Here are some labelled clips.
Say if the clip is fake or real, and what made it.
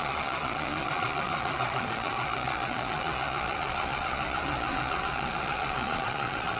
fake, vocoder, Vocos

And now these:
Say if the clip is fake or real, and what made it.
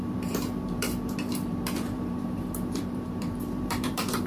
fake, vocoder, BigVGAN v2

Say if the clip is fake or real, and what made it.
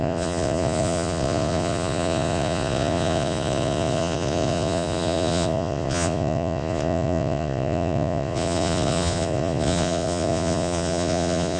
fake, vocoder, Vocos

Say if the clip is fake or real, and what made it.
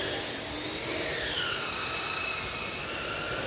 real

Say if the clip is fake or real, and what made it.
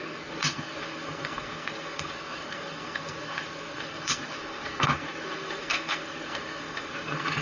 fake, codec, SNAC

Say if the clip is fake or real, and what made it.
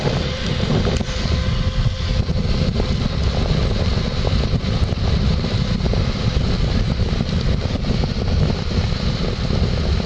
fake, vocoder, BigVGAN v2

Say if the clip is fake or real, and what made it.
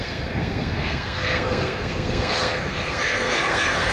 fake, codec, SNAC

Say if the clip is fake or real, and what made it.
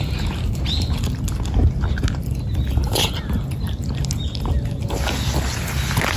real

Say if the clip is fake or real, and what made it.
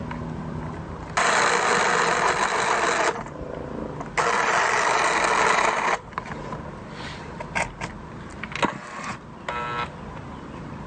real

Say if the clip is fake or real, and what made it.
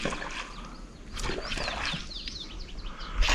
real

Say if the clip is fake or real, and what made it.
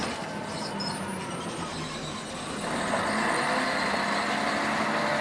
real